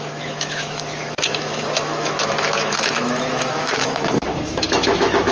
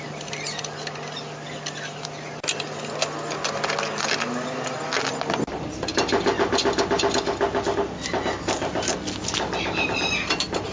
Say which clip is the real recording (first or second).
second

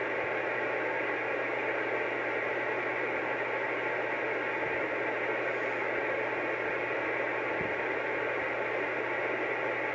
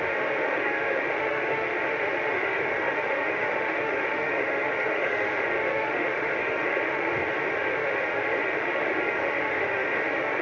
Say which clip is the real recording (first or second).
first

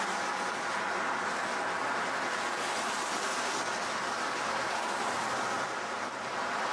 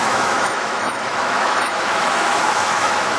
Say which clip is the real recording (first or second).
first